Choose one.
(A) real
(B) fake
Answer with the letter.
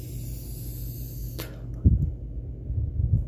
A